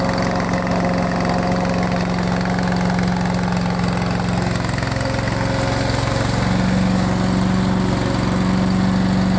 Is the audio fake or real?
real